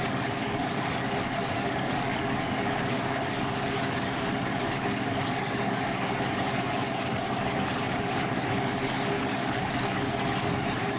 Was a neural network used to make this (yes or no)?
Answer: yes